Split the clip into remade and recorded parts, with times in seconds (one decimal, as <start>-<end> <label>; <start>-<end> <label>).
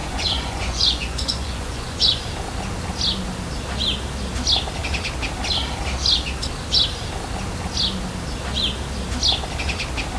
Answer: 0.0-2.2 remade; 2.2-10.2 recorded